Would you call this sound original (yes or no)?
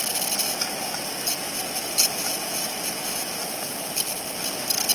yes